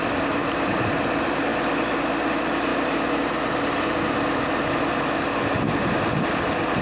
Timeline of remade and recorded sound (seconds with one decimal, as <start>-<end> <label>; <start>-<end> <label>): 0.0-6.8 recorded